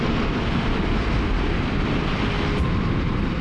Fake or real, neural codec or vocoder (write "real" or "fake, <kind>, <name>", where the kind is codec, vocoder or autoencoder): real